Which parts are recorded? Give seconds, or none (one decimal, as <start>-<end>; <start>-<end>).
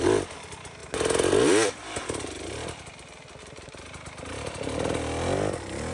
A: 0.0-5.9